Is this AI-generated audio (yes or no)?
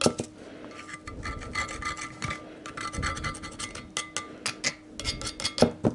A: no